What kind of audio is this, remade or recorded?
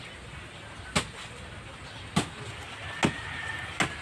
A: recorded